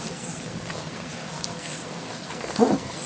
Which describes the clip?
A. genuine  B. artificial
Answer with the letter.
B